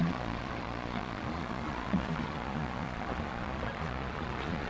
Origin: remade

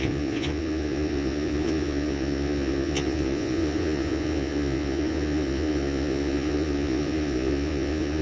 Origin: remade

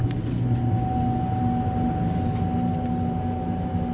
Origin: recorded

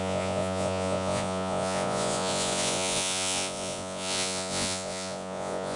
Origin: remade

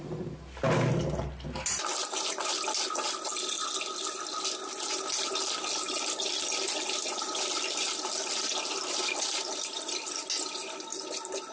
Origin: recorded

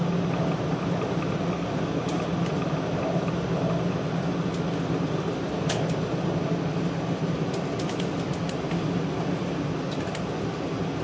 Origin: recorded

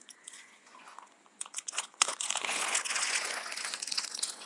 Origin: remade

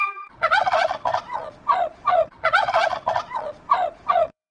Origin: remade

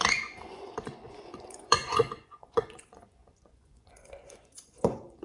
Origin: remade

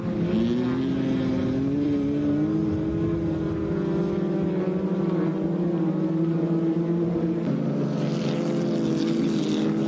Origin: recorded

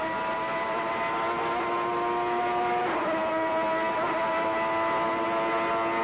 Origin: recorded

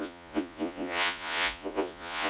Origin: remade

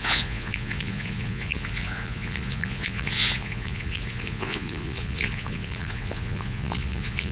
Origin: remade